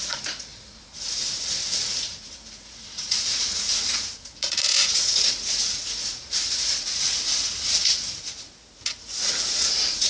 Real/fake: fake